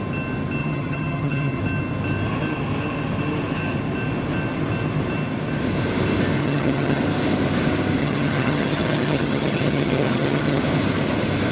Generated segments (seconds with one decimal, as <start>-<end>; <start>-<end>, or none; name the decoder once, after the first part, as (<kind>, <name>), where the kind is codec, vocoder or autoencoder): 0.6-1.6 (vocoder, HiFi-GAN); 6.4-7.0; 8.0-10.6